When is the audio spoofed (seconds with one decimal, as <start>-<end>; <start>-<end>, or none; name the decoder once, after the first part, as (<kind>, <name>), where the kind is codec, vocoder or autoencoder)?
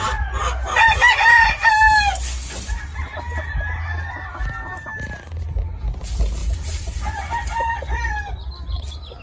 6.4-8.3 (vocoder, BigVGAN v2)